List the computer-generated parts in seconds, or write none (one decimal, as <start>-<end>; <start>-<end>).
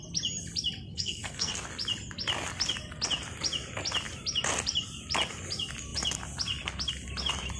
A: 0.9-1.5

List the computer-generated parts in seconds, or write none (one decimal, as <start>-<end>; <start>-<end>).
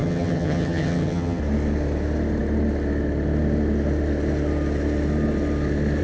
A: 0.0-1.4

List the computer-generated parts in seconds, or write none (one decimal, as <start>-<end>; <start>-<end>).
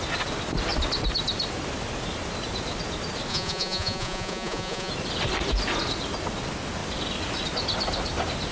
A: 3.3-4.9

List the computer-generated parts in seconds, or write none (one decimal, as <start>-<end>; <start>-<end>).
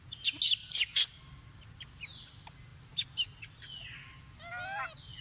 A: none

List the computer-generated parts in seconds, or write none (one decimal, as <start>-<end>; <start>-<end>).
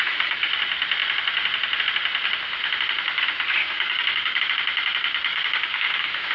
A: 3.6-4.4; 5.3-6.3